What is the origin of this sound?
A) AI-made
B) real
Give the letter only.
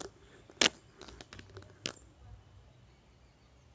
B